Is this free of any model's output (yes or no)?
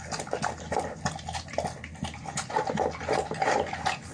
yes